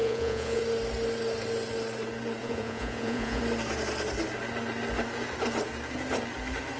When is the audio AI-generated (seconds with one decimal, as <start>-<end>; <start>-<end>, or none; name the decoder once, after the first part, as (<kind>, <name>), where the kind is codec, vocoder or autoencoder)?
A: 0.0-0.6 (vocoder, Vocos); 2.4-3.4